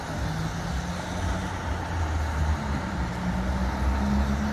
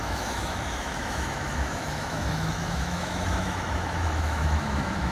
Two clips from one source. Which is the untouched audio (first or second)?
first